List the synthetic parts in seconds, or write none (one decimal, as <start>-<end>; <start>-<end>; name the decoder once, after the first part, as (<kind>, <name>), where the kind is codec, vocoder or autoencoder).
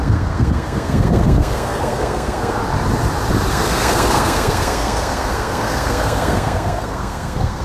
0.0-2.6 (codec, SNAC); 3.5-7.6